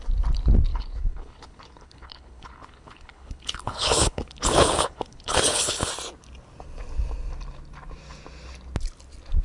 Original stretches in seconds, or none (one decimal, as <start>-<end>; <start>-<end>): 0.0-0.7; 5.9-9.4

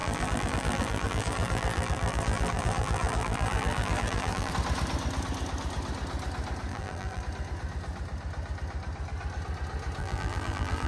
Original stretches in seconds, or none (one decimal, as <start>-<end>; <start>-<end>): 4.5-6.7; 7.2-10.0

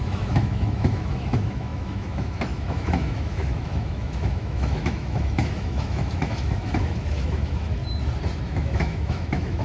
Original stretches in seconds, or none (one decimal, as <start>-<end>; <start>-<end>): 7.8-8.4

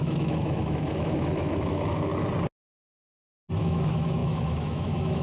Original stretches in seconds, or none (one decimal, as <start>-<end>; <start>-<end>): 2.1-3.6

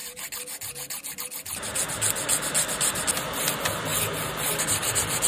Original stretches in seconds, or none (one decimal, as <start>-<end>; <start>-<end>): 0.0-5.3

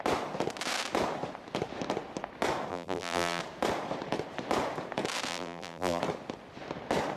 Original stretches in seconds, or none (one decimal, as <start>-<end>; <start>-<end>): 0.0-2.7; 3.4-5.3; 6.0-7.2

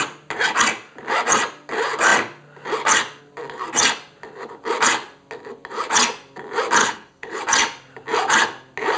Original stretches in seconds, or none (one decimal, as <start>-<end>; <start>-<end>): 0.0-6.8; 7.4-9.0